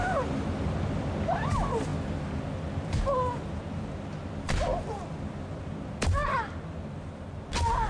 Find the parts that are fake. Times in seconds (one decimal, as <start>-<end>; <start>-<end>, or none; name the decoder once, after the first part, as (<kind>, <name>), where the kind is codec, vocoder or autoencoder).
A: none